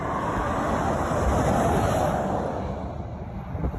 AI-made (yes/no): no